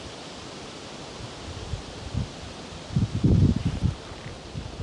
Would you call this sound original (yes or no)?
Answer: yes